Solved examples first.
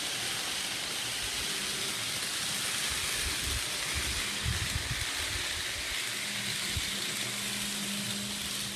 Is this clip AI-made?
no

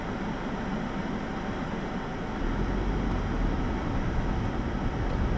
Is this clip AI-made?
no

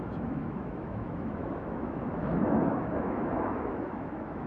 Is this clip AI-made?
yes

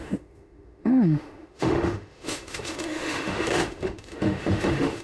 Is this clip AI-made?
yes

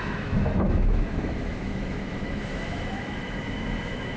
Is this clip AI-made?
yes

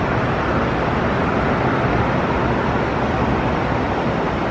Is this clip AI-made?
no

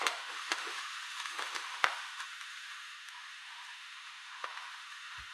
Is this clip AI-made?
yes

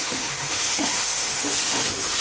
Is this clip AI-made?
yes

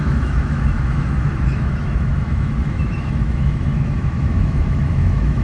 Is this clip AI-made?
yes